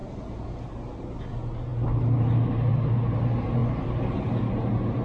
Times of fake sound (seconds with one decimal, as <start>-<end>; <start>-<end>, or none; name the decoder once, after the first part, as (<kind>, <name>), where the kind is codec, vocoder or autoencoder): none